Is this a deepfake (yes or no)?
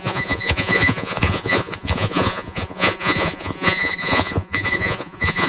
yes